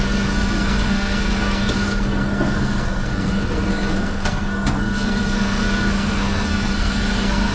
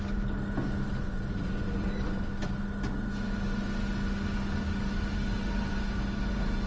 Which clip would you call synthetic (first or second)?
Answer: first